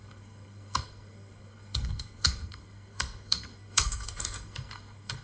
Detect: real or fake fake